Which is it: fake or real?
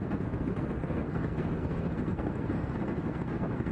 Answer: fake